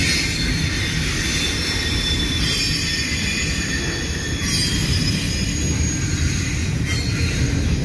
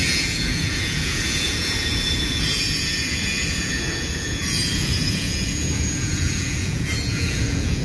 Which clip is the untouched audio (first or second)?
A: first